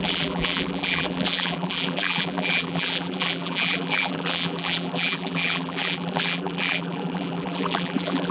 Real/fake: fake